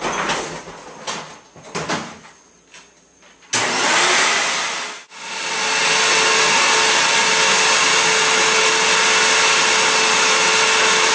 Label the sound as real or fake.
real